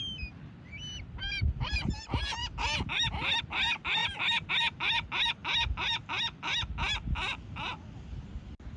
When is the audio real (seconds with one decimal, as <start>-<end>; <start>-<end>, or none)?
0.0-8.8